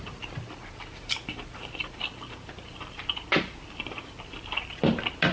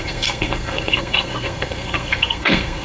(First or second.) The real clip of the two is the first